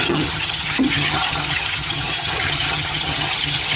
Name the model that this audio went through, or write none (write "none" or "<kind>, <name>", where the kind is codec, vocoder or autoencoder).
vocoder, HiFi-GAN